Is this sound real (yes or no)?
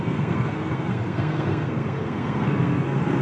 no